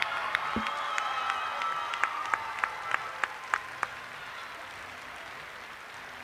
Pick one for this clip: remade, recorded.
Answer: recorded